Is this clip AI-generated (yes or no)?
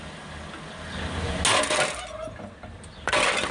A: no